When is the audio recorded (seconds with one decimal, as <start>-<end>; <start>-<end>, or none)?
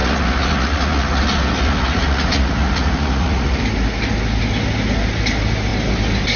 3.6-6.4